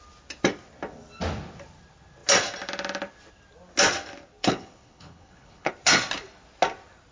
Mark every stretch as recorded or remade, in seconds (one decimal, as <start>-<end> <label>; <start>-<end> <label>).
0.0-4.4 recorded; 4.4-5.7 remade; 5.7-7.1 recorded